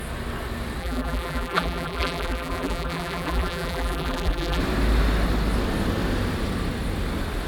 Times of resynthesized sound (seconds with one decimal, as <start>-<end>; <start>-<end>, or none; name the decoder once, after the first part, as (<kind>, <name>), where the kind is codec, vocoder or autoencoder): 0.8-4.6 (vocoder, BigVGAN v2)